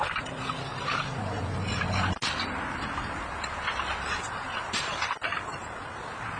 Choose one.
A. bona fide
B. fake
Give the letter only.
A